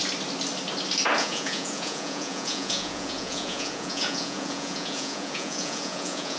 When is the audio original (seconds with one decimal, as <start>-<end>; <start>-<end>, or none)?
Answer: 0.0-1.2

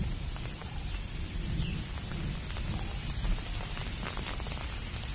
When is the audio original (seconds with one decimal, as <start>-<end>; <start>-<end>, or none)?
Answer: 0.0-0.6; 3.2-5.1

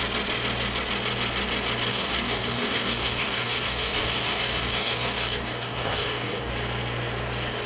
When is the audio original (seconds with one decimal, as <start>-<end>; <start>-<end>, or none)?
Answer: 0.0-1.9; 6.5-7.7

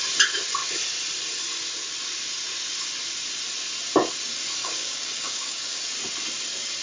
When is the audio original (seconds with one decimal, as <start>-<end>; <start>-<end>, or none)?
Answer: 0.0-4.6; 5.8-6.8